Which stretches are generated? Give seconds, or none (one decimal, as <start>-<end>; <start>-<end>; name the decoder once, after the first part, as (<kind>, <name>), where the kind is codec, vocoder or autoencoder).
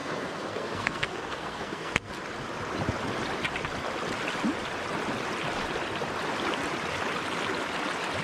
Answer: 0.0-2.1 (codec, SNAC)